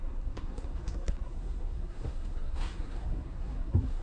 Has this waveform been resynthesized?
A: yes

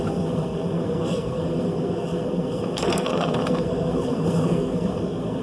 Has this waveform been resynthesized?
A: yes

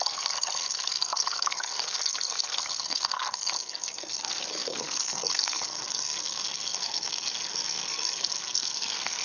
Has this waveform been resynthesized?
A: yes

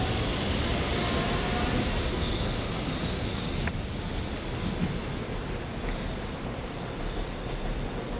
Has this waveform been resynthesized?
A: no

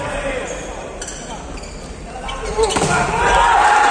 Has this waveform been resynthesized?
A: no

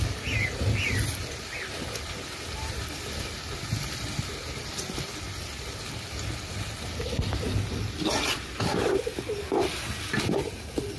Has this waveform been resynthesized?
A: no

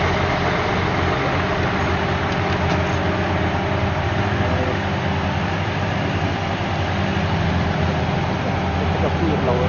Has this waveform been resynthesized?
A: no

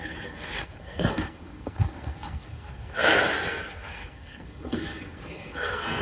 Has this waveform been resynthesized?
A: yes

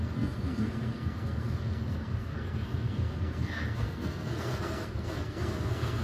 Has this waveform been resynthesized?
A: yes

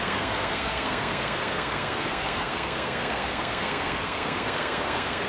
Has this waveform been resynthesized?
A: yes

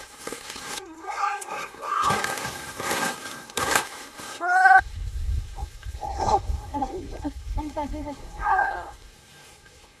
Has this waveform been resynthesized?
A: yes